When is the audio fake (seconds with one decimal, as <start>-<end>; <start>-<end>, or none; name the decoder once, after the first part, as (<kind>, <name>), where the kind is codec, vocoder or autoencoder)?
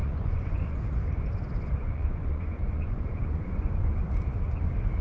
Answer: 0.0-0.8 (vocoder, Vocos); 1.8-4.0